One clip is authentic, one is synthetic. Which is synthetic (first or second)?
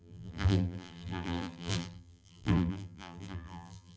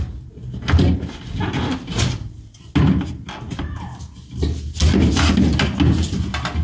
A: first